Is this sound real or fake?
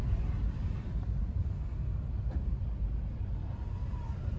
real